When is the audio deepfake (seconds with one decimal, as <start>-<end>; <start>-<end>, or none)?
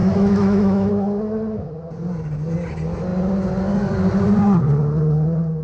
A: 0.0-0.9